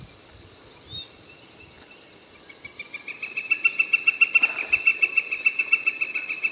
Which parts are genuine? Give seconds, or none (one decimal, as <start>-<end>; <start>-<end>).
0.0-6.5